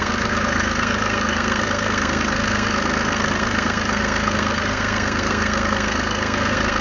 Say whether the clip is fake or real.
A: fake